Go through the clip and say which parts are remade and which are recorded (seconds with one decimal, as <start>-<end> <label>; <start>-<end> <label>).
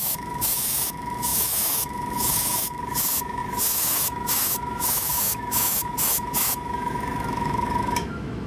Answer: 0.0-8.5 remade